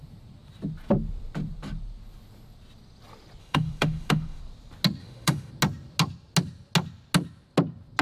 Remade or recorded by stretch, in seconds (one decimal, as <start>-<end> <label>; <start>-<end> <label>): 0.0-3.4 recorded; 3.4-4.4 remade; 4.4-5.0 recorded; 5.0-5.5 remade; 5.5-8.0 recorded